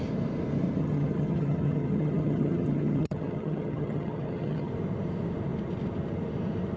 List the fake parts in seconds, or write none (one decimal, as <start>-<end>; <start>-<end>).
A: 0.8-4.7